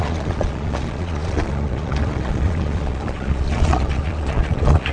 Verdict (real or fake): fake